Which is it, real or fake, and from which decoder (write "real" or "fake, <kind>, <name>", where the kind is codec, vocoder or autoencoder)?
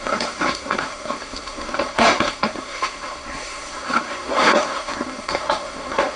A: fake, codec, SNAC